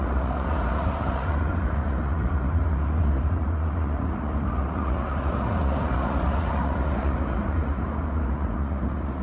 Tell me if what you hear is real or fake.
fake